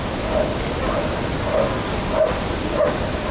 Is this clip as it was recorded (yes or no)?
yes